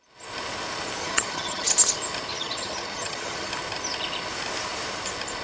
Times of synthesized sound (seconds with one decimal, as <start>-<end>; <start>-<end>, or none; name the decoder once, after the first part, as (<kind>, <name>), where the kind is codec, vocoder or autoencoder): 1.0-1.7 (vocoder, HiFi-GAN); 2.3-3.5